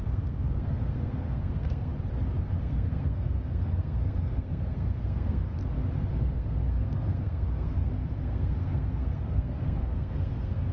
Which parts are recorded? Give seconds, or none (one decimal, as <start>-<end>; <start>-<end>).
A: 1.9-2.6; 5.6-6.1